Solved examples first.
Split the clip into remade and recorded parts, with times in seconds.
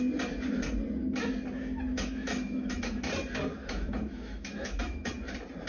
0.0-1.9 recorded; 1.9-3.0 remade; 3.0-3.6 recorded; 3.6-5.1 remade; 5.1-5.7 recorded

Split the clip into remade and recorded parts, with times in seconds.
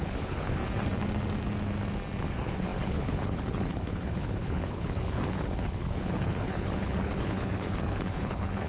0.0-0.6 remade; 0.6-2.3 recorded; 2.3-8.7 remade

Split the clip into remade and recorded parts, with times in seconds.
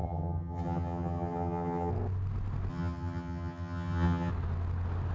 0.0-1.9 remade; 1.9-2.7 recorded; 2.7-4.3 remade; 4.3-5.1 recorded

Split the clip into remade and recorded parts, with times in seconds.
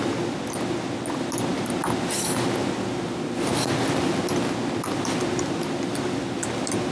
0.0-6.9 recorded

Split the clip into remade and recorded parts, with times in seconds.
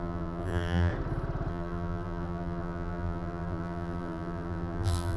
0.0-0.9 remade; 0.9-1.5 recorded; 1.5-5.2 remade